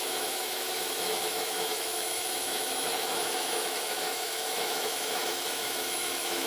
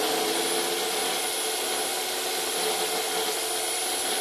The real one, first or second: second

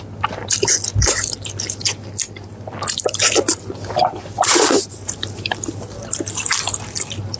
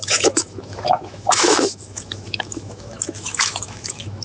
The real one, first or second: first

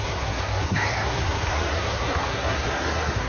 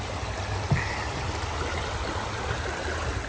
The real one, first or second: second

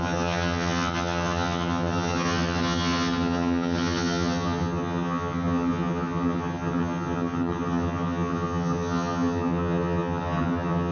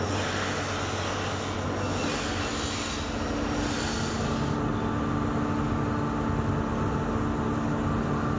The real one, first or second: second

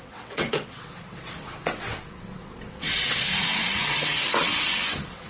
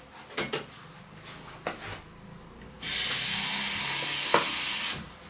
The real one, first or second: second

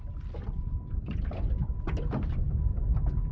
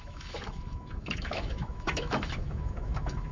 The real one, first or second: first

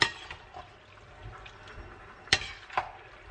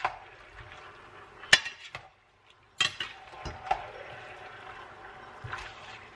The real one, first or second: second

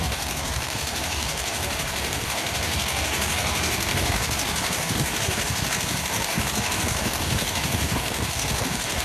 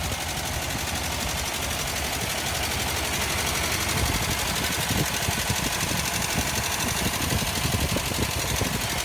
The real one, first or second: second